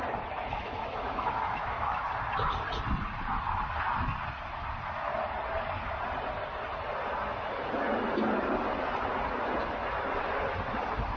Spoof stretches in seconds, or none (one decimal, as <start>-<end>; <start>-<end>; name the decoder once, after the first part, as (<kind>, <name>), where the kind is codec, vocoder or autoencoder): 0.5-2.0 (autoencoder, DAC-VAE)